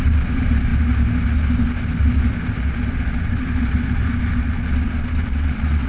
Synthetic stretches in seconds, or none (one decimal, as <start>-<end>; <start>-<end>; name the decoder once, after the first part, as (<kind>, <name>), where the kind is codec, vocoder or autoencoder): 5.2-5.9 (vocoder, WaveNeXt)